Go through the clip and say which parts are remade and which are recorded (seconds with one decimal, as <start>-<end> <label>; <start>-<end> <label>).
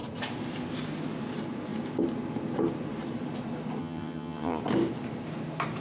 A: 0.0-3.8 recorded; 3.8-4.6 remade; 4.6-5.8 recorded